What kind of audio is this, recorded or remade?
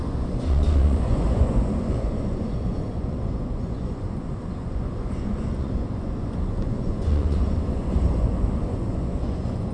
remade